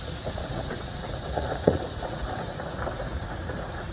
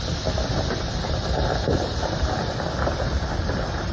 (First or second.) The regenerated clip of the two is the first